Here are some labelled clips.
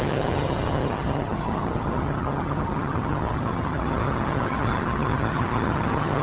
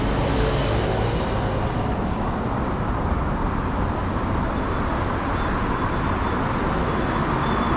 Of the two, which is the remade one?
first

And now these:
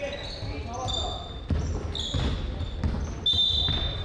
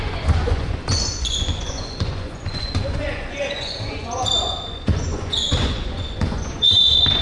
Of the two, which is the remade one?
second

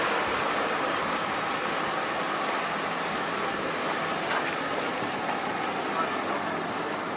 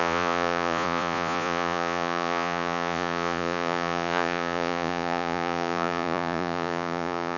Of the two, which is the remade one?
second